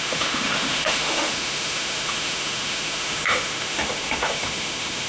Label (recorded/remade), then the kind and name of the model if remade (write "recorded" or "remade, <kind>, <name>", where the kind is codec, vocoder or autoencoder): remade, autoencoder, DAC-VAE